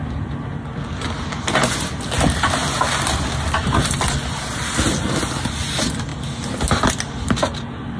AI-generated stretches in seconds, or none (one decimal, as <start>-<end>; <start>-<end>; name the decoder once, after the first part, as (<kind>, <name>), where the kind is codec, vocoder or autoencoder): none